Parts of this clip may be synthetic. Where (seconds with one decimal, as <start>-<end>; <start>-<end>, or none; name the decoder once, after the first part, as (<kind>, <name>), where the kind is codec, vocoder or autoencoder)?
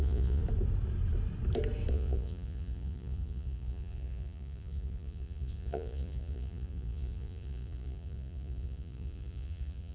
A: 0.0-0.4 (vocoder, Vocos); 1.9-9.9